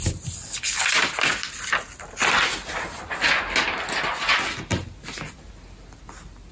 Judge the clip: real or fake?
real